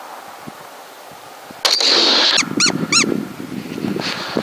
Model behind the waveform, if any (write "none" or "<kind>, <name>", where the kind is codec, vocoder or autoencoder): none